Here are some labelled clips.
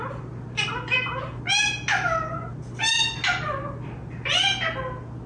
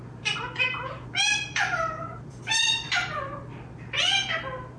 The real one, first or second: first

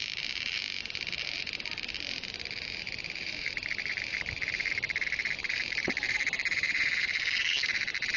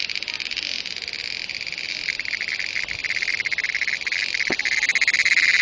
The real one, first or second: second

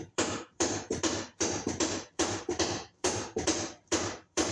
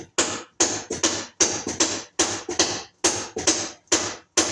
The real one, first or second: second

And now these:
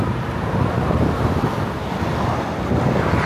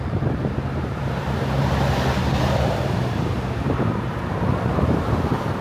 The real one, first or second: first